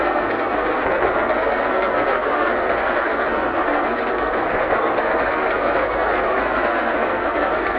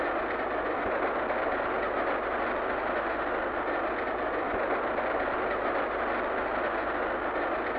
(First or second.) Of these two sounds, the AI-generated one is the first